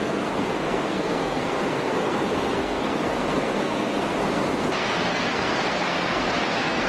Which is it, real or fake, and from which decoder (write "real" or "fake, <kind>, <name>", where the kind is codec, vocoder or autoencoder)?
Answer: fake, codec, SNAC